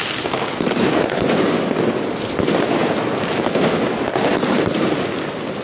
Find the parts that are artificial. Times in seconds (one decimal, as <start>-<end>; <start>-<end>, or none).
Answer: none